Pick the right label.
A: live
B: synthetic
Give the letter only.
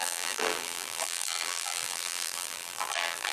B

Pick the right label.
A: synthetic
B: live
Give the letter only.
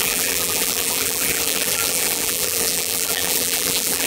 A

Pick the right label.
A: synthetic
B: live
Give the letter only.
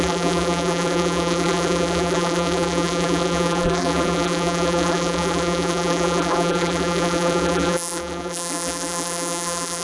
A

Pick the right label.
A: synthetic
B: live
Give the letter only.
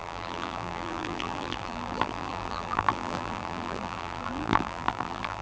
A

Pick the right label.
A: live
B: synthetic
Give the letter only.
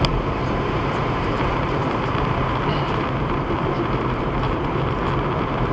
B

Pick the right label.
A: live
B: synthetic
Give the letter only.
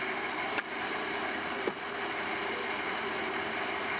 A